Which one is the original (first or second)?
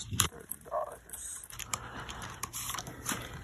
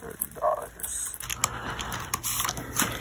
second